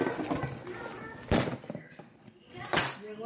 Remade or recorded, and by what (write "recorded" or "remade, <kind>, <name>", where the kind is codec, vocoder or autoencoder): recorded